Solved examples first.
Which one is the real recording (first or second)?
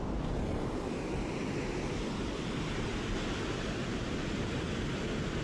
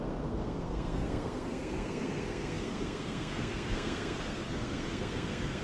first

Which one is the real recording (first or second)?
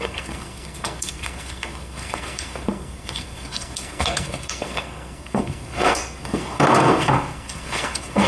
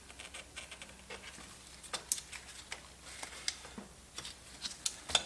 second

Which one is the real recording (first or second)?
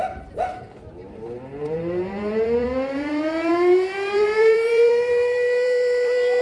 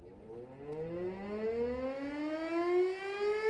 second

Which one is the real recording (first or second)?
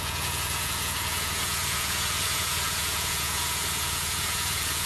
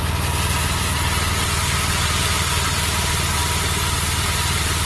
second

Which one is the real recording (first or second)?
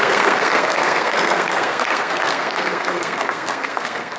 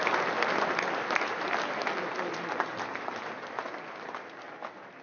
second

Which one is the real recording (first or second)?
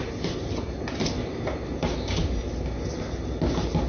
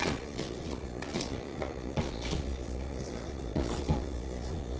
first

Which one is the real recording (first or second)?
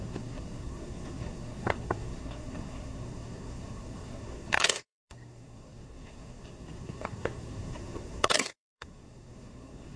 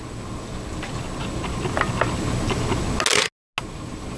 second